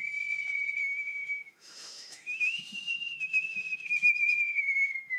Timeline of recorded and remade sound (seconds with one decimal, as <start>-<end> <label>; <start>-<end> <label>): 0.0-0.8 recorded; 0.8-3.9 remade; 3.9-4.4 recorded; 4.4-5.2 remade